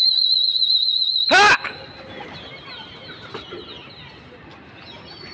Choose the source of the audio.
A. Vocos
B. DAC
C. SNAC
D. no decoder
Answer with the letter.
D